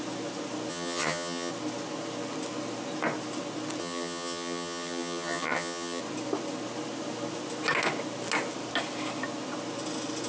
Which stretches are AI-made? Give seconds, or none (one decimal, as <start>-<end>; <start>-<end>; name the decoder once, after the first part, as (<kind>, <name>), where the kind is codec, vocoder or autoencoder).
0.7-1.5 (vocoder, HiFi-GAN); 3.8-6.0